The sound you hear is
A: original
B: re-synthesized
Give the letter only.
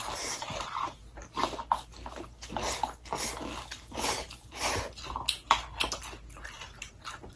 A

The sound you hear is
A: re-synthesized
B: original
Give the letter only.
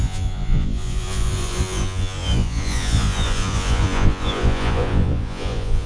A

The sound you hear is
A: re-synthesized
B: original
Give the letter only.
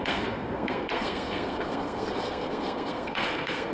A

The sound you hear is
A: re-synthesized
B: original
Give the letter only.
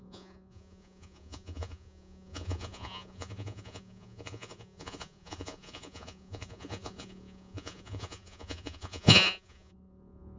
A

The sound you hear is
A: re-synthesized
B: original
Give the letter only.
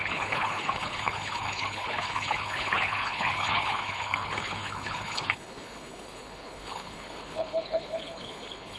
A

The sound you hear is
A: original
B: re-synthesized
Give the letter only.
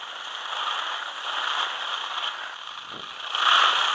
A